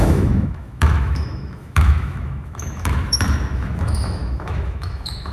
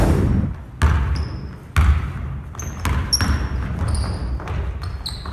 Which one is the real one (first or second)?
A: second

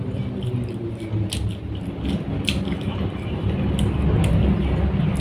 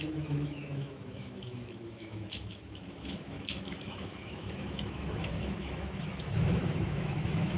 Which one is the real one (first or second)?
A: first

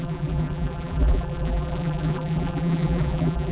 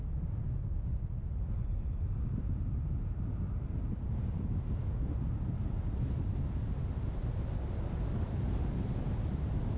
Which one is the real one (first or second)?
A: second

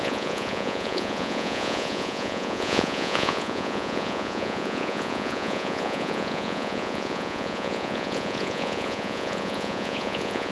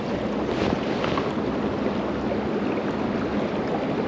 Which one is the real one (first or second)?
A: second